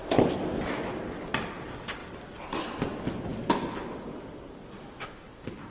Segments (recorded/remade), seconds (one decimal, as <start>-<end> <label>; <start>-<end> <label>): 0.0-5.7 recorded